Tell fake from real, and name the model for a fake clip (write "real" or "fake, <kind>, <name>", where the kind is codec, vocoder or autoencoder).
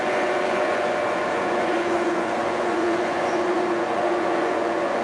fake, vocoder, Vocos